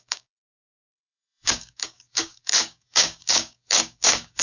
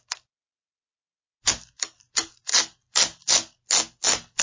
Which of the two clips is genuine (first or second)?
second